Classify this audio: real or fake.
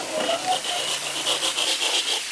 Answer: real